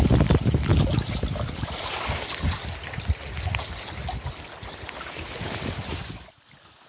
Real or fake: real